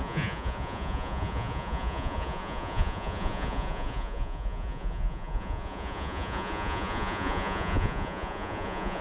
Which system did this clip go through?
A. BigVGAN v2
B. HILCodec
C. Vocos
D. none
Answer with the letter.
C